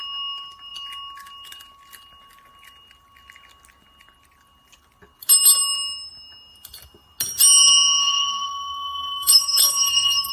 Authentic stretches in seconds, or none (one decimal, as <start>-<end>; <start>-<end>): 0.0-8.0